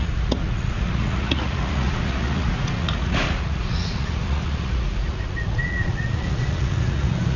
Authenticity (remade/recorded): remade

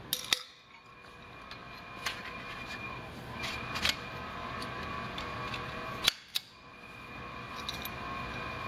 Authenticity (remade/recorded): recorded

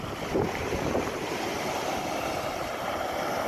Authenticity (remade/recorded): recorded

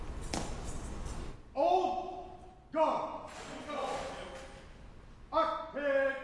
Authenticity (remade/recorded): recorded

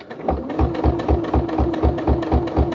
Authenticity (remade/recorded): recorded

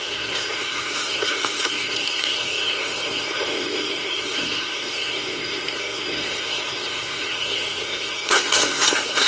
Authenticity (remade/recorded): remade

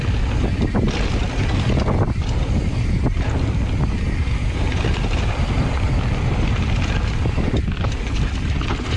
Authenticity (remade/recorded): recorded